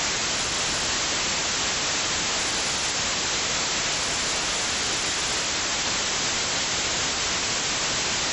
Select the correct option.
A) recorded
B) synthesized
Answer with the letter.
A